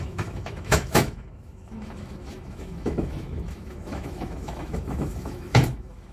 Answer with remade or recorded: remade